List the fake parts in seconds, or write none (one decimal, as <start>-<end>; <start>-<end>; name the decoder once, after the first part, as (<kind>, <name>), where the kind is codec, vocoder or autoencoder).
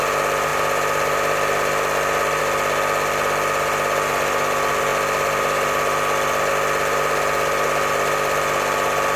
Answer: none